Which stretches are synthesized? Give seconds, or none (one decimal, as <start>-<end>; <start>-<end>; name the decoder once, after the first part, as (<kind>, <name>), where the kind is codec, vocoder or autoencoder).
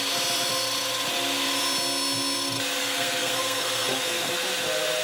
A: 2.8-4.3 (codec, SNAC)